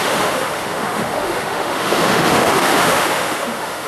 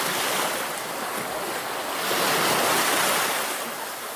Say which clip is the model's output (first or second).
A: first